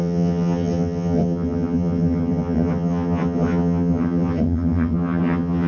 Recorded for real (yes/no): no